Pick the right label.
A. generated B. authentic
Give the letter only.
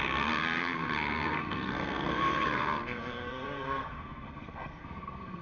A